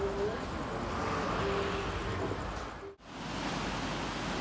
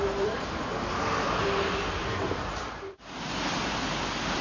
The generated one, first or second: second